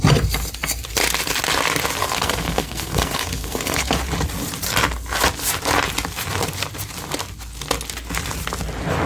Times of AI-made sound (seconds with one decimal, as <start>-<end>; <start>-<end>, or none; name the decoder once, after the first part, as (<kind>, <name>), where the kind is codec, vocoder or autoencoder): 2.0-3.9 (codec, SNAC)